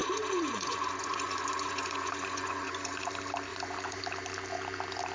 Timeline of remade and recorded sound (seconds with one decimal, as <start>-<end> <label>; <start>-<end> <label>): 0.0-3.1 remade; 3.1-3.5 recorded; 3.5-4.0 remade; 4.0-5.1 recorded

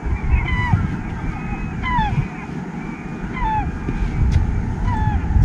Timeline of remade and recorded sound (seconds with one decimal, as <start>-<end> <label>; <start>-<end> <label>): 0.0-5.4 recorded

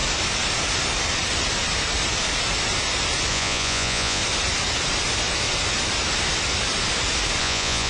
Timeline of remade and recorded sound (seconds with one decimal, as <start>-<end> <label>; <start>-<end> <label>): 0.0-3.3 recorded; 3.3-4.2 remade; 4.2-7.4 recorded; 7.4-7.9 remade